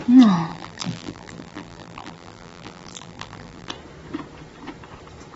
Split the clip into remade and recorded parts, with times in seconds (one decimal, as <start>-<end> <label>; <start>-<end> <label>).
0.0-0.5 recorded; 0.5-3.7 remade; 3.7-5.4 recorded